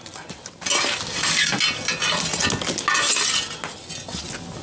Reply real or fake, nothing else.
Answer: real